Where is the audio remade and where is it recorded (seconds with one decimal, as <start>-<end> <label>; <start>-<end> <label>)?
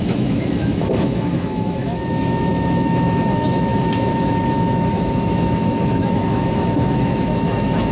0.0-7.9 remade